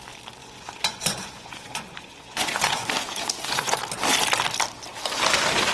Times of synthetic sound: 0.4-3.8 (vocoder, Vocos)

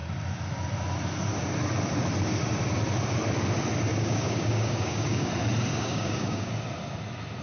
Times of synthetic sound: 3.9-5.3 (codec, DAC); 5.7-6.5

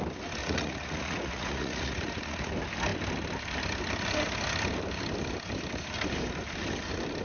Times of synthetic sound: 0.4-2.5 (vocoder, Vocos)

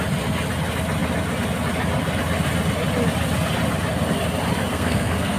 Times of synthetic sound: 4.7-5.4 (codec, SNAC)

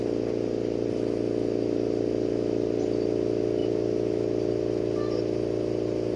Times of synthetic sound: none